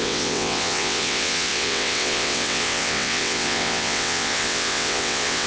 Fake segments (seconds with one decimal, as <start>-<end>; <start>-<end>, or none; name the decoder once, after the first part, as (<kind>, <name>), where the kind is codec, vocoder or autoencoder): 0.0-5.5 (vocoder, WaveNeXt)